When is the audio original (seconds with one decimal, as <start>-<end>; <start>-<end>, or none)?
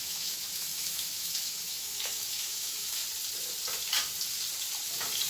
3.0-5.3